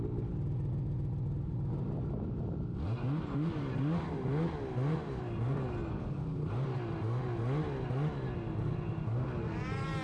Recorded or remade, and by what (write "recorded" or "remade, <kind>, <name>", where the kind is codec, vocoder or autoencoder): recorded